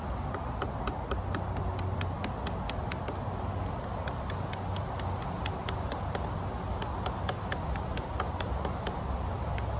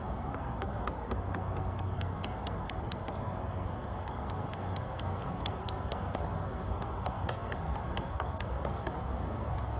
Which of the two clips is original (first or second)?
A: first